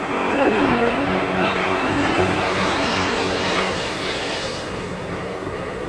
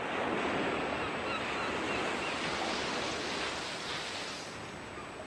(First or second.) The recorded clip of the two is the second